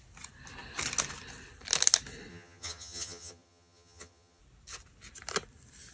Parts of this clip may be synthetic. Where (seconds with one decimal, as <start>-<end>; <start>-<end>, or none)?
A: 2.3-4.4